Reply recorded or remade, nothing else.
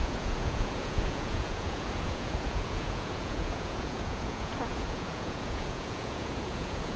remade